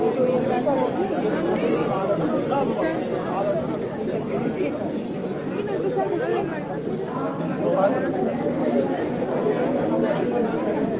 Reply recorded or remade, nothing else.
recorded